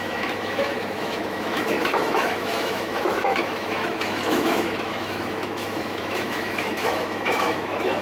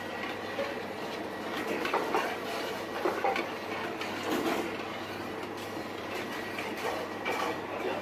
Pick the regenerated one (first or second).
first